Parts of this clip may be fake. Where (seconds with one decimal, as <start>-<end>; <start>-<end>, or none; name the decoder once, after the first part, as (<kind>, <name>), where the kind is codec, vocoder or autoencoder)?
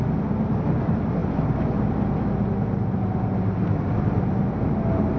none